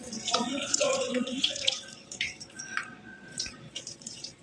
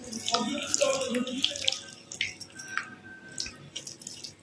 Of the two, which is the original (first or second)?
second